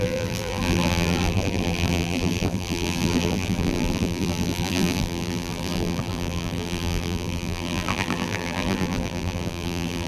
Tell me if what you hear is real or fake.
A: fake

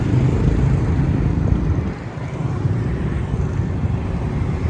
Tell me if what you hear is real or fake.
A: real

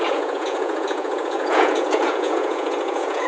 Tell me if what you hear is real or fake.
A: fake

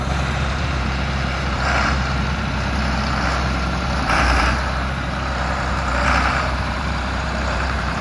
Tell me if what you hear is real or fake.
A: fake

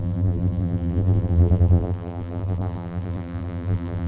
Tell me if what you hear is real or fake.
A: fake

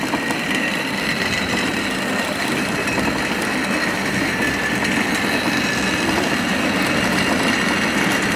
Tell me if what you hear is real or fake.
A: real